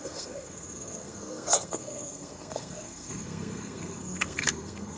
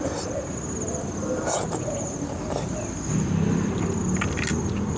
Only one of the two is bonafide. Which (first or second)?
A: second